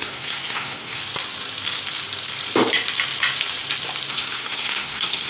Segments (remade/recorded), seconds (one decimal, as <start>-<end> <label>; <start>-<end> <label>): 0.0-1.0 remade; 1.0-4.1 recorded; 4.1-5.3 remade